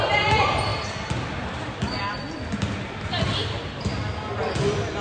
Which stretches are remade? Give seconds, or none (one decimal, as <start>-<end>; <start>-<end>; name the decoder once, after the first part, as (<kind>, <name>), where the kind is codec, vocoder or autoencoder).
none